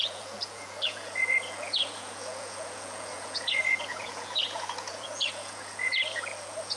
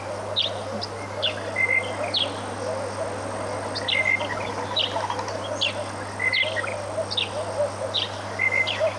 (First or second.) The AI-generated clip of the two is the first